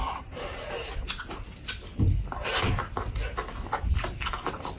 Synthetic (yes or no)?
no